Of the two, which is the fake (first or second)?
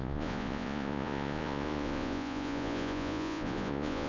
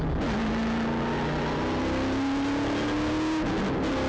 first